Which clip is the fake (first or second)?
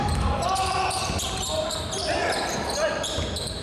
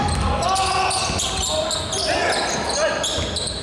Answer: first